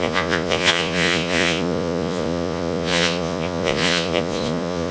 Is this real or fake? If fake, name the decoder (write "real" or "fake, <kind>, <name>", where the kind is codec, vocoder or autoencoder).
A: fake, vocoder, Vocos